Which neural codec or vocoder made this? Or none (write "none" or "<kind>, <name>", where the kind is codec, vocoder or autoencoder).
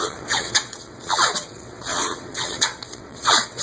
vocoder, WaveNeXt